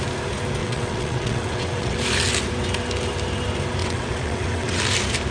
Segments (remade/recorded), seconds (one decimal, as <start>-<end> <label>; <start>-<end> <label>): 0.0-0.6 recorded; 0.6-2.0 remade; 2.0-3.8 recorded; 3.8-4.8 remade; 4.8-5.3 recorded